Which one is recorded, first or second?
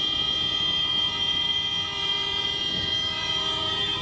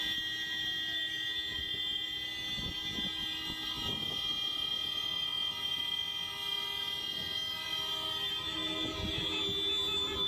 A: second